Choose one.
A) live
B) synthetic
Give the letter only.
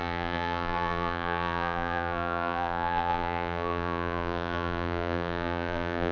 B